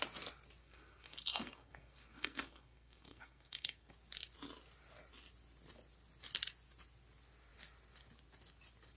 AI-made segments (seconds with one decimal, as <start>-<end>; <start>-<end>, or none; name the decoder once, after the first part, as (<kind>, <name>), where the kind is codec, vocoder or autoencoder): 0.6-3.9 (codec, SNAC)